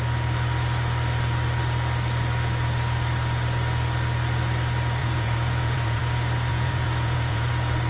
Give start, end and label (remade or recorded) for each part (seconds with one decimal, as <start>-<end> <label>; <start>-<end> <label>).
0.0-5.0 recorded; 5.0-6.0 remade; 6.0-6.5 recorded; 6.5-7.5 remade; 7.5-7.9 recorded